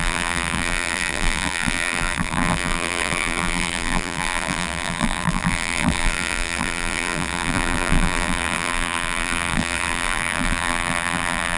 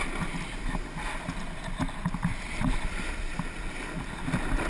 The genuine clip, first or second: second